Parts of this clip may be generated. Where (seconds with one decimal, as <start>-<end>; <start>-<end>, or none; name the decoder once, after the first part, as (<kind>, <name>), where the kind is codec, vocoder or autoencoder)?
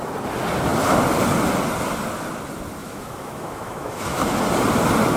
2.8-4.4 (autoencoder, DAC-VAE)